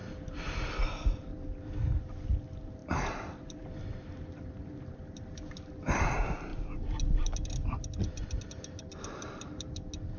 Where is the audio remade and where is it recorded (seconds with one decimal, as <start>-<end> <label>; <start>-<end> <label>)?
0.0-10.2 recorded